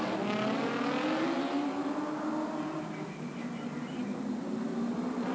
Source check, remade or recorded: recorded